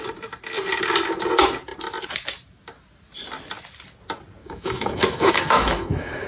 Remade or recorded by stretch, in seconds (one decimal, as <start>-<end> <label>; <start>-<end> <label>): 0.0-4.4 recorded; 4.4-6.3 remade